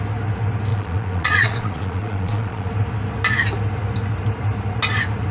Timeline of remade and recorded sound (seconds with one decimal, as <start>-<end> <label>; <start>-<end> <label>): 0.0-0.7 recorded; 0.7-2.7 remade; 2.7-5.3 recorded